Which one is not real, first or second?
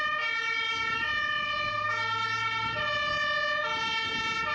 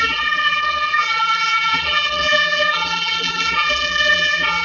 second